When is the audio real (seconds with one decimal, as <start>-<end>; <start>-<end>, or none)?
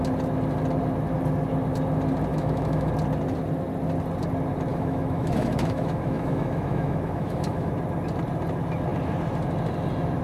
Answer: 0.0-2.3; 2.9-4.7; 7.7-10.2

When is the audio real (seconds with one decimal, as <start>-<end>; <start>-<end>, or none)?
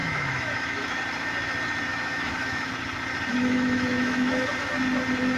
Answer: 1.0-1.9; 2.7-3.3; 4.5-5.4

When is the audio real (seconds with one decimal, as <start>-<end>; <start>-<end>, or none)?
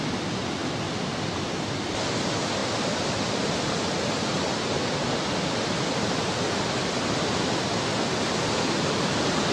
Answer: 0.0-9.5